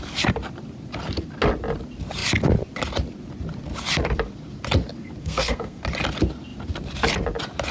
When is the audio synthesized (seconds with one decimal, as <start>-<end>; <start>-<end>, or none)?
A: 5.2-5.8